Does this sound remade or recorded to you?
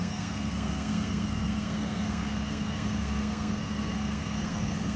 remade